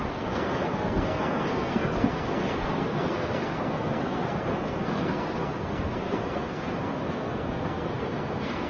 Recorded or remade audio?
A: remade